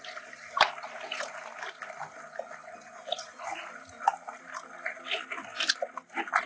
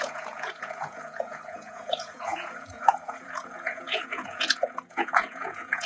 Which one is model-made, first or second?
second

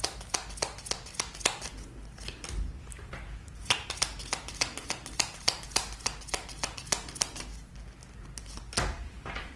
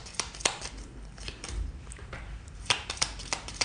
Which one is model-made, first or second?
second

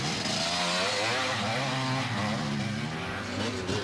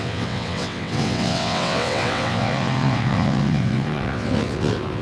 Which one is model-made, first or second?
second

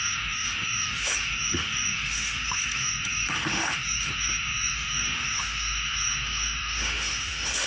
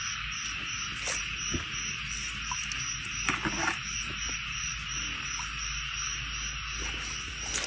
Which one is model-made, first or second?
first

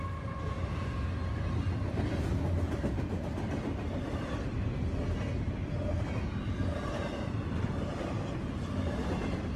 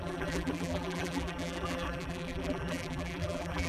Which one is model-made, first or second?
second